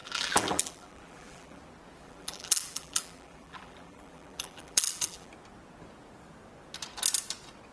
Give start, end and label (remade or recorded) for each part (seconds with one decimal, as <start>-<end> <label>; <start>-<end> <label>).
0.0-1.6 remade; 1.6-2.0 recorded; 2.0-5.3 remade; 5.3-7.7 recorded